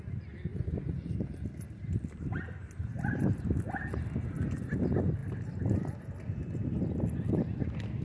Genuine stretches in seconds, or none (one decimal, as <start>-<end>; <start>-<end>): 0.0-0.5; 2.1-2.6; 3.5-8.0

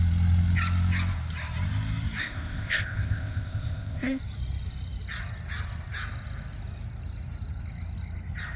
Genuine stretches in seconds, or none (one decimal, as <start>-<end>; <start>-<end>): 0.0-2.2; 4.2-8.6

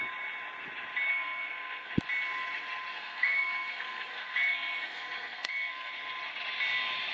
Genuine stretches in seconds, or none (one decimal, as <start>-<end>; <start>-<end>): 0.0-1.1; 1.9-2.9; 5.9-7.1